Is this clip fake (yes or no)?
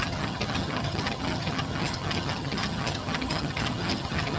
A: yes